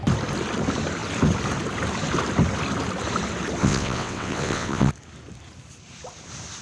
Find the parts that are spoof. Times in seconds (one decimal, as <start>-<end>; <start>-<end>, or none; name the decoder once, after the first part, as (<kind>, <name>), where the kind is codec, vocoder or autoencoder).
3.6-4.9 (vocoder, WaveNeXt)